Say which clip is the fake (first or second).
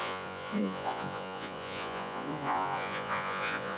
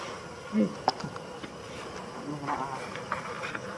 first